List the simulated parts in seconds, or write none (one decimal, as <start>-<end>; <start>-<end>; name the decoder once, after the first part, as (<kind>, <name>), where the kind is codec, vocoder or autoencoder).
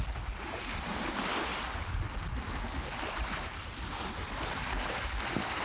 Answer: none